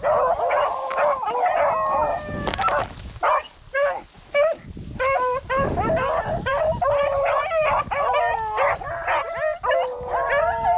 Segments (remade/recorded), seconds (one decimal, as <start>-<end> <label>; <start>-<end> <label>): 0.0-2.1 recorded; 2.1-2.6 remade; 2.6-10.8 recorded